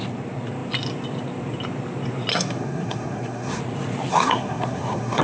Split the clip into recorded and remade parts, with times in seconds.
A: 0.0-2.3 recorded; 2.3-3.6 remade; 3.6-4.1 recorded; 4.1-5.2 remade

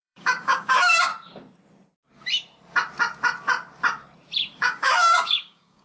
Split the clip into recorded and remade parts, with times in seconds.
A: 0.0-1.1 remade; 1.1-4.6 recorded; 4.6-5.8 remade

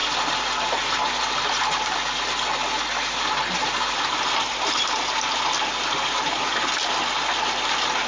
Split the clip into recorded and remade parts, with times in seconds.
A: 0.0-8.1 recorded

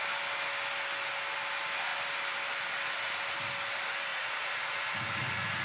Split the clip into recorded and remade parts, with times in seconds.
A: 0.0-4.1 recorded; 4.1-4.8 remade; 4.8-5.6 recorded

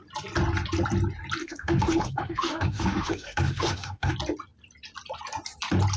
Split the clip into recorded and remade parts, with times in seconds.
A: 0.0-1.4 recorded; 1.4-4.1 remade; 4.1-6.0 recorded